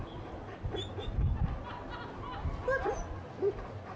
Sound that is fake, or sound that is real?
real